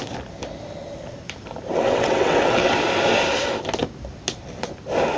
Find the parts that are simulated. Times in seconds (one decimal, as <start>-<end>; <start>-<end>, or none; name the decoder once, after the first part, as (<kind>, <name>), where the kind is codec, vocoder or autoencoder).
1.7-2.7 (vocoder, WaveNeXt)